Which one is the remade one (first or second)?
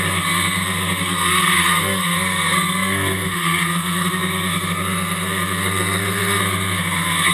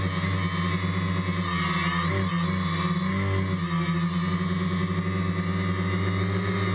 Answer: first